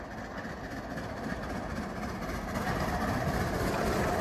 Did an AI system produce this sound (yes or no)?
no